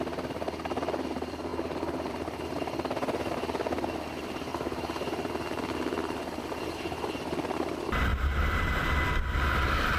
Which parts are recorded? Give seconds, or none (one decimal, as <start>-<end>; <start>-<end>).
0.0-4.5; 5.3-10.0